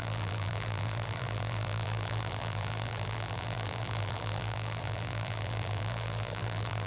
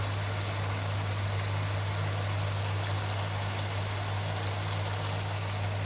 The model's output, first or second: first